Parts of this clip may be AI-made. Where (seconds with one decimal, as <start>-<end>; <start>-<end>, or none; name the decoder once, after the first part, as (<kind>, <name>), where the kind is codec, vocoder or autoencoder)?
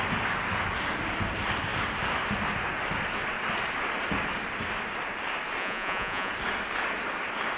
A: 5.6-6.3 (vocoder, Vocos)